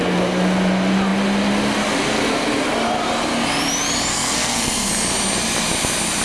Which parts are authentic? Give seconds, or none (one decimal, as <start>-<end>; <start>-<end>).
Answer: 0.0-4.1; 4.9-6.2